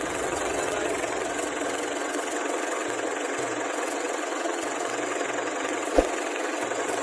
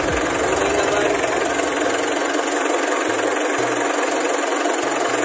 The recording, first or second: second